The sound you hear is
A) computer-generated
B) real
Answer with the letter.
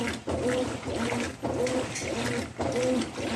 B